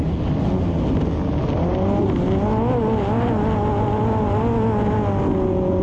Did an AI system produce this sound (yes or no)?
no